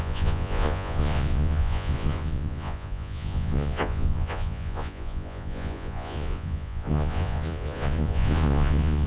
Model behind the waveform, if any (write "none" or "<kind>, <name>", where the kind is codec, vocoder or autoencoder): vocoder, Vocos